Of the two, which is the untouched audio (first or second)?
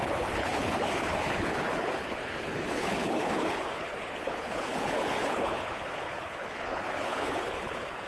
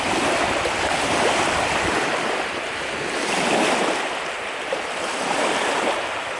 second